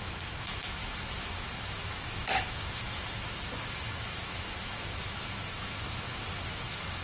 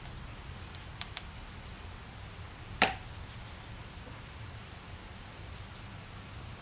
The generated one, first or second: first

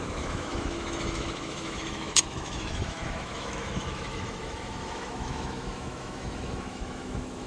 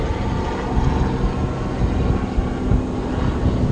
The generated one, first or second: first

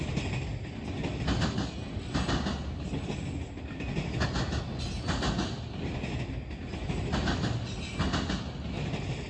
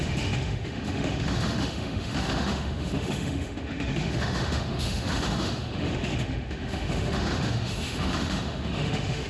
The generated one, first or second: second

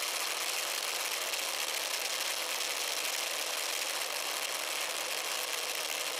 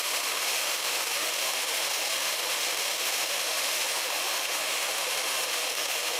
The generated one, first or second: second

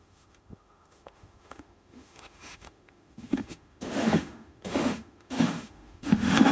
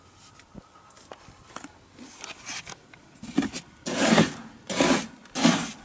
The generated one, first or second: first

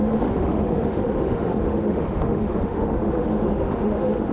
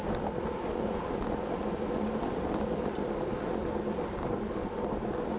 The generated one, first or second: first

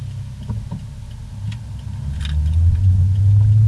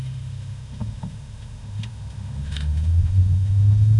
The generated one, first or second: second